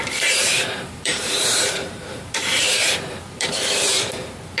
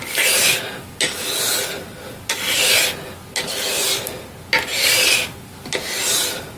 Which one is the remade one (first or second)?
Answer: first